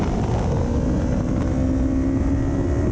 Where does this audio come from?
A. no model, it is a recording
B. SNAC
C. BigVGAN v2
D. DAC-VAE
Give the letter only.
A